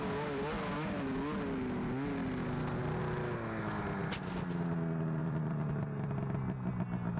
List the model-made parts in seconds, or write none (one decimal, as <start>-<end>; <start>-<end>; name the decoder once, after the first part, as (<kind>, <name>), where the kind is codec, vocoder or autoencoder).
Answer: 5.2-5.7 (vocoder, BigVGAN v2)